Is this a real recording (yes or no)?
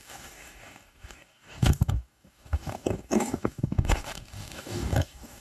no